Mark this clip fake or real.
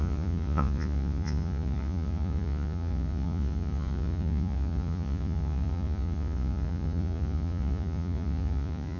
fake